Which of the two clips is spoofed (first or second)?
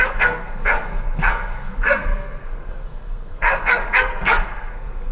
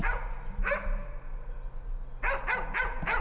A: first